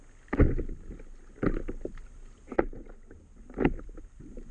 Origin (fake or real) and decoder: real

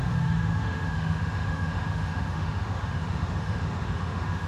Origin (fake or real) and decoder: fake, autoencoder, DAC-VAE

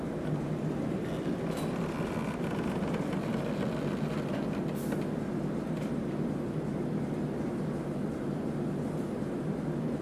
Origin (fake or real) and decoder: real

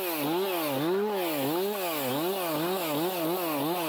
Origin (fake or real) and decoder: real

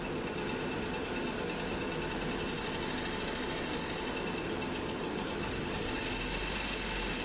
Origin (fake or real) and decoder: real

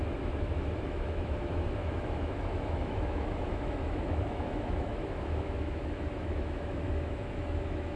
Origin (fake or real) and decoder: fake, autoencoder, DAC-VAE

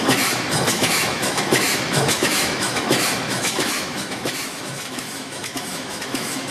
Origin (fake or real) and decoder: fake, autoencoder, DAC-VAE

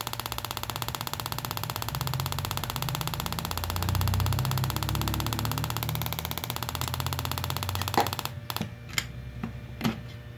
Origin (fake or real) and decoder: real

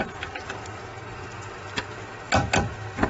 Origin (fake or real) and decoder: real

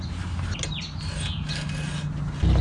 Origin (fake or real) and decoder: real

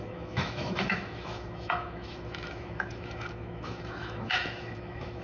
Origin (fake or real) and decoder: fake, autoencoder, DAC-VAE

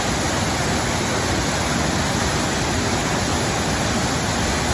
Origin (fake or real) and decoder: real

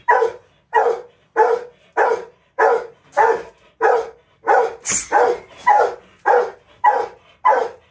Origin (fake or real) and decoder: real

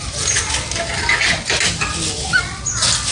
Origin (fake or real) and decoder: real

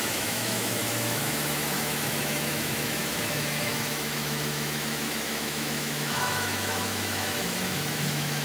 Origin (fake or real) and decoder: fake, autoencoder, DAC-VAE